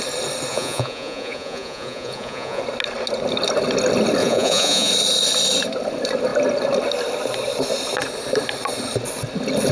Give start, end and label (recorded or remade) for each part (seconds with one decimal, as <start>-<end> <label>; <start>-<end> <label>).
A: 0.0-0.5 recorded; 0.5-2.6 remade; 2.6-4.2 recorded; 4.2-4.9 remade; 4.9-9.7 recorded

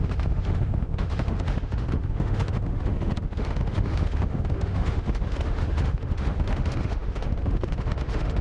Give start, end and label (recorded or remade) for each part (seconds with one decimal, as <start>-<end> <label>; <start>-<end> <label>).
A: 0.0-8.4 remade